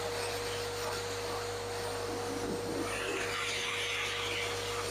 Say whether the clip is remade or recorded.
recorded